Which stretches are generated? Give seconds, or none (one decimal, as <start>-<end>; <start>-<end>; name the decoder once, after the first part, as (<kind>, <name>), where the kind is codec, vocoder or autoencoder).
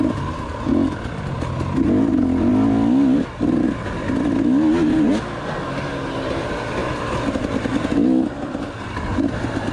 none